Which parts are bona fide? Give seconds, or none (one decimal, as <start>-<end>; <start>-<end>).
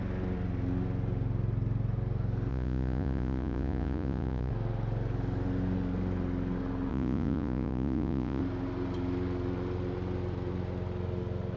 0.0-2.5; 4.5-6.9; 8.4-11.6